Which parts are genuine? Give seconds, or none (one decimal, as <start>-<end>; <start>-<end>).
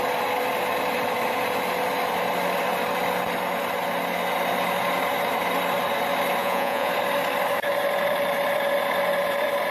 0.0-6.4; 6.9-9.7